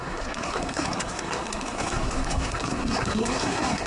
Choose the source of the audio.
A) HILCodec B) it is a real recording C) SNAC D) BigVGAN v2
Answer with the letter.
C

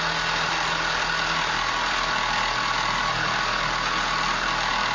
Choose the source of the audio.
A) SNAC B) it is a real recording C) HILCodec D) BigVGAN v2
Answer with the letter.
B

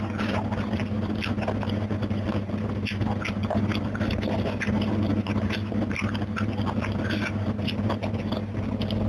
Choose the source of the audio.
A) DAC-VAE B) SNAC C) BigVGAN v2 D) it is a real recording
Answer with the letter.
D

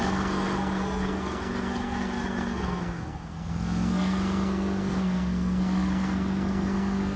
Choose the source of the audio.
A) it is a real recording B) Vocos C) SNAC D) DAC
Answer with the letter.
C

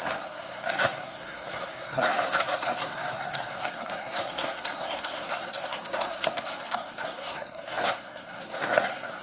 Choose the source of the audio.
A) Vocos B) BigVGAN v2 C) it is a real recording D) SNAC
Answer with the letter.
D